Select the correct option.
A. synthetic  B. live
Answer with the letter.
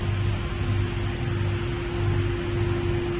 B